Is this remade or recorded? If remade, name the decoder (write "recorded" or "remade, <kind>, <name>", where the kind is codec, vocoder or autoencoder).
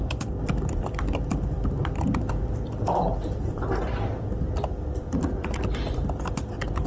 remade, vocoder, BigVGAN v2